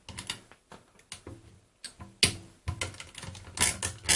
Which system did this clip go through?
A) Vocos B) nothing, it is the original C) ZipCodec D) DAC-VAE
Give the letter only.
B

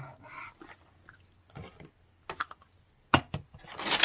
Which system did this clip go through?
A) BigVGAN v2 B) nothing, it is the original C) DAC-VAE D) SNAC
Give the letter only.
B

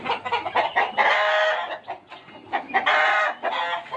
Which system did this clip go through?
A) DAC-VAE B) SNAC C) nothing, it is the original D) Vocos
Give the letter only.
C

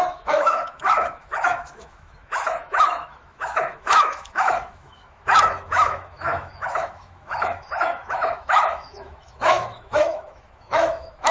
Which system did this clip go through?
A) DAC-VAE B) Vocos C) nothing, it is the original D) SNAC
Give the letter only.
A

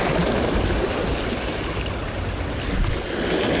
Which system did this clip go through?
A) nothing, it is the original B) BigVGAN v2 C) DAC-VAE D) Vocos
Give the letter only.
A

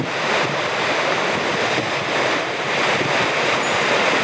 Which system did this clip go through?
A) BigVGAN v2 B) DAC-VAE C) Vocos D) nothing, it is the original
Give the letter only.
D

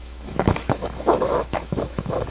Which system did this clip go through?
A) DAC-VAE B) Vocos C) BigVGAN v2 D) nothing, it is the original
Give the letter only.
A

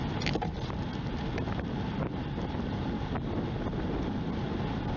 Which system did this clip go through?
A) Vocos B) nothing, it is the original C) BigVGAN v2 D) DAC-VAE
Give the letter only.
B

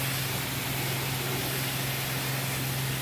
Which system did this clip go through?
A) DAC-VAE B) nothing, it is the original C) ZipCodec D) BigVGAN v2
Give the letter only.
B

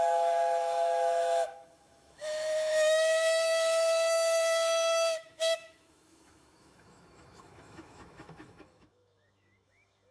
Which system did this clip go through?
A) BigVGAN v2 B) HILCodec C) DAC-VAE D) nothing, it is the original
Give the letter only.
C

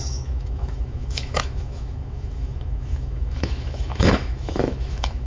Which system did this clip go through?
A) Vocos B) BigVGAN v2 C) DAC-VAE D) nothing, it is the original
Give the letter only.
C